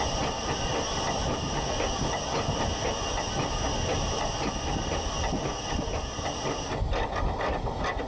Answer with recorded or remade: recorded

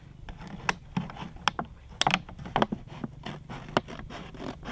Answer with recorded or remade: recorded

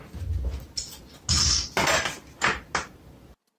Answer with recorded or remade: recorded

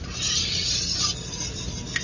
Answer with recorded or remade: recorded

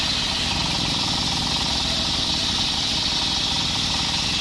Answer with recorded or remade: recorded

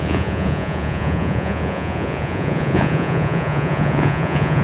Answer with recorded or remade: remade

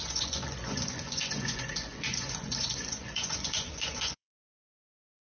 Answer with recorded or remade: remade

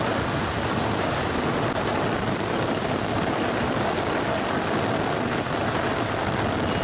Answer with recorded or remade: recorded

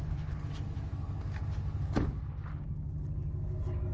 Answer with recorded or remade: recorded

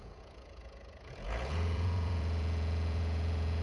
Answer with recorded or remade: remade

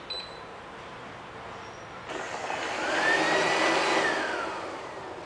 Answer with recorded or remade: recorded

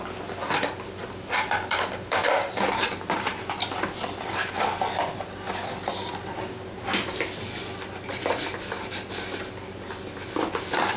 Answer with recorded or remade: recorded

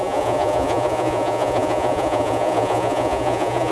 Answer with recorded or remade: remade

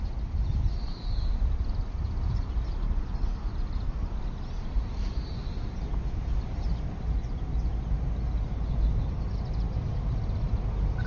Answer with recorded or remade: recorded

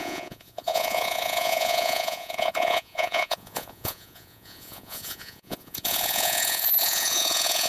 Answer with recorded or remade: remade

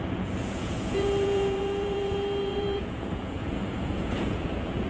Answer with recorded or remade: remade